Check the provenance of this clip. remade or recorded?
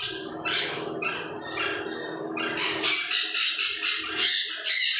recorded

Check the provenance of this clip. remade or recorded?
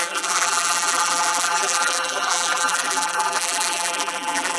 remade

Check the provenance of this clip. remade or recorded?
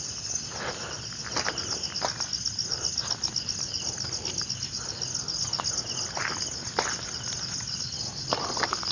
recorded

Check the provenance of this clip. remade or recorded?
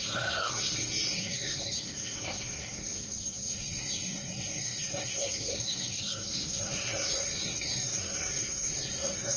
remade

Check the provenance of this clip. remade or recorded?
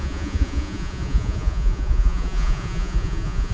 remade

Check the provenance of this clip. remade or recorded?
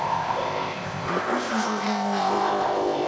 remade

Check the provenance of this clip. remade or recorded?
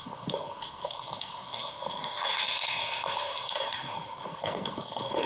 remade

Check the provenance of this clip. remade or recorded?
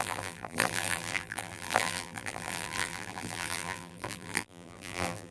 remade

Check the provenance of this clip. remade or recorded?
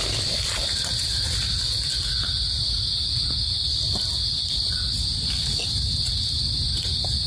recorded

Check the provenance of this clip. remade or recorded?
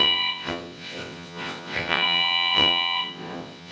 remade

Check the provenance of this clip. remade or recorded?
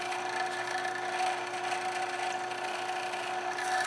recorded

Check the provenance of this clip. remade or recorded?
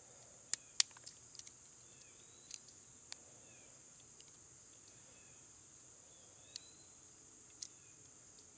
recorded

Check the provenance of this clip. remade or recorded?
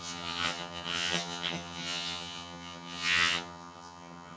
remade